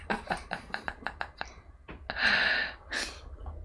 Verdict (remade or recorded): recorded